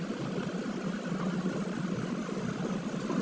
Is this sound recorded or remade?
recorded